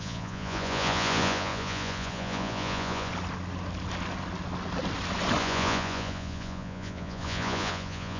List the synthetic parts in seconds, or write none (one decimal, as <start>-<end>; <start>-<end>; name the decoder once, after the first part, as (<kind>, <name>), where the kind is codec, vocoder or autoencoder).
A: 0.0-3.1 (vocoder, Vocos); 5.4-8.2